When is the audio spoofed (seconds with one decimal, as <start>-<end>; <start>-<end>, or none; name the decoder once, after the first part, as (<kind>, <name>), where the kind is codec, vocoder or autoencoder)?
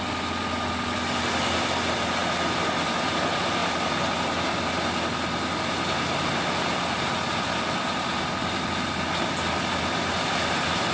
none